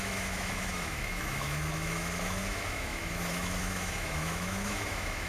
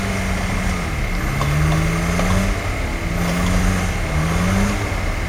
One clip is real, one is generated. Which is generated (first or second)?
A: first